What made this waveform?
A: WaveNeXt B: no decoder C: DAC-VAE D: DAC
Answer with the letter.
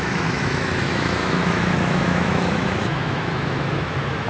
C